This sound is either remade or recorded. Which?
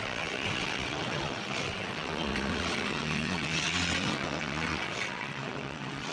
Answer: remade